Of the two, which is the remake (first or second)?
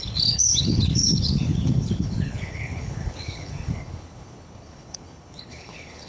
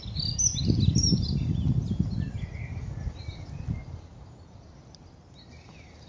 first